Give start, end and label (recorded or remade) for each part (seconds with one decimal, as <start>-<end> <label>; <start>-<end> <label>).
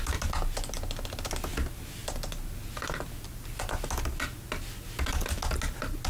0.0-6.1 recorded